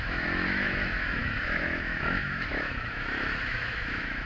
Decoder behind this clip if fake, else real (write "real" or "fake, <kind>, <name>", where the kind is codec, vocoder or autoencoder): fake, autoencoder, DAC-VAE